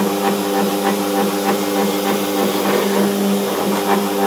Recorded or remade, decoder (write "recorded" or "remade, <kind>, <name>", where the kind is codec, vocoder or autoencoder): recorded